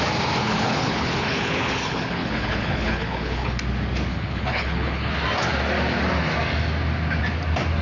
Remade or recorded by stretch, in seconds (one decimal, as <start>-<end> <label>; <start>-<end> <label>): 0.0-0.4 recorded; 0.4-3.6 remade; 3.6-4.1 recorded; 4.1-5.1 remade; 5.1-7.8 recorded